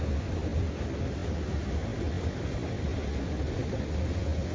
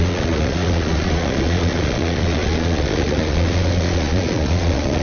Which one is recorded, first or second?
first